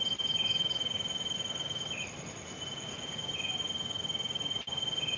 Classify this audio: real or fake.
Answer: real